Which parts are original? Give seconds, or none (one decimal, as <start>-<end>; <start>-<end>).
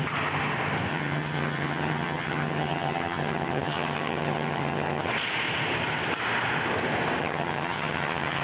0.0-0.9; 5.1-7.2